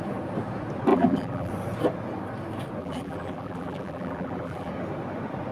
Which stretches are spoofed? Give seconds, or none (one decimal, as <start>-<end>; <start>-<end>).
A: 0.9-1.5; 2.8-4.7